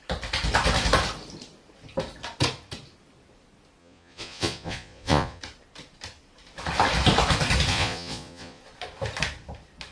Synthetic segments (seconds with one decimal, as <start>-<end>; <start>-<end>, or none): 3.8-5.4; 7.7-8.6